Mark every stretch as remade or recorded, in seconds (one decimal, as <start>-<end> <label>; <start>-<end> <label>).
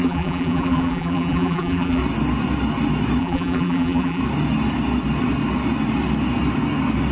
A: 0.0-2.0 remade; 2.0-3.2 recorded; 3.2-4.2 remade; 4.2-7.1 recorded